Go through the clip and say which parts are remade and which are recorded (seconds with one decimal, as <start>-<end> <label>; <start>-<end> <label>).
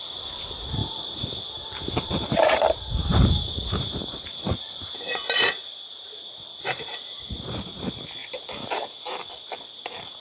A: 0.0-0.8 recorded; 0.8-5.4 remade; 5.4-6.5 recorded; 6.5-7.2 remade; 7.2-10.2 recorded